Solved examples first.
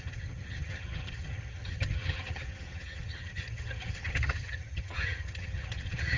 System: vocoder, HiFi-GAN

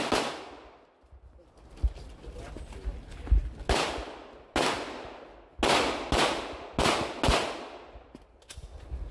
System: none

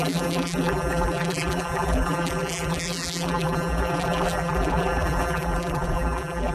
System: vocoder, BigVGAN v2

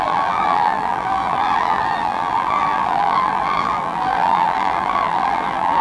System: vocoder, BigVGAN v2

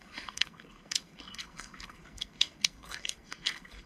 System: codec, SNAC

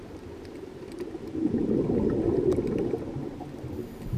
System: none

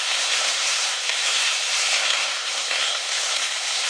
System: codec, SNAC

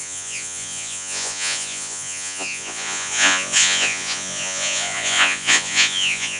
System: vocoder, Vocos